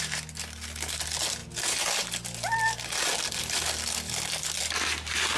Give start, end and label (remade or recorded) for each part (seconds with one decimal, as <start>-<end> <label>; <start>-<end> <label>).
0.0-5.4 recorded